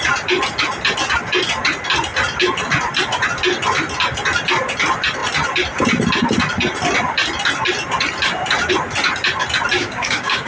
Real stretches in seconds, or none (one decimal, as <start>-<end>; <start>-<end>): 0.0-9.8